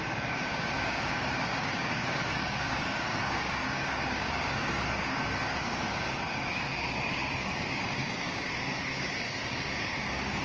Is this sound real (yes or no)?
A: no